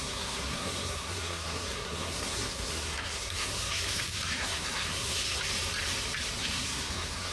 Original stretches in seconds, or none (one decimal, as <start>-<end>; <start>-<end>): 5.4-6.4